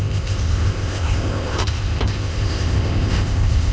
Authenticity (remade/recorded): remade